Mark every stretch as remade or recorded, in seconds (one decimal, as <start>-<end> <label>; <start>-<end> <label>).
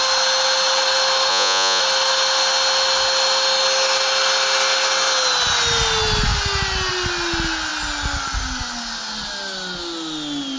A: 0.0-1.3 recorded; 1.3-1.8 remade; 1.8-10.6 recorded